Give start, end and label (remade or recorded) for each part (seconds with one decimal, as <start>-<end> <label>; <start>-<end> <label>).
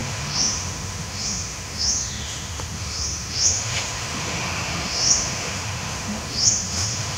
0.0-7.2 remade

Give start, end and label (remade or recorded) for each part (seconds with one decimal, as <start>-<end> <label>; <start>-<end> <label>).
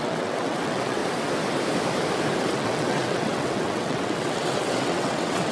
0.0-1.0 remade; 1.0-2.4 recorded; 2.4-5.5 remade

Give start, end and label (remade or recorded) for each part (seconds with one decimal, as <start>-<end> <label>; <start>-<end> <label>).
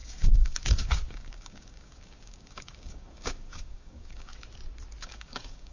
0.0-4.3 remade; 4.3-5.0 recorded; 5.0-5.7 remade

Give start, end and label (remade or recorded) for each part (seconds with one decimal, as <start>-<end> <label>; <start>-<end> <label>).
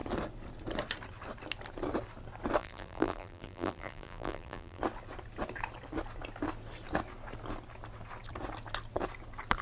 0.0-2.6 recorded; 2.6-4.8 remade; 4.8-9.6 recorded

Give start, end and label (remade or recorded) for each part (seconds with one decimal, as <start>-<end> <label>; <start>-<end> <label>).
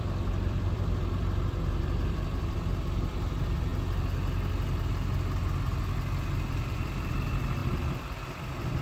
0.0-3.7 remade; 3.7-6.3 recorded; 6.3-7.6 remade; 7.6-8.3 recorded; 8.3-8.8 remade